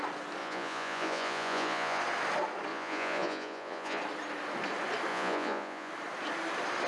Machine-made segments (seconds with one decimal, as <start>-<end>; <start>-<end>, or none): 0.4-2.0; 2.7-4.0; 5.1-5.9